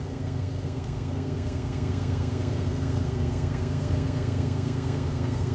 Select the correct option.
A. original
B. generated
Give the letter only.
B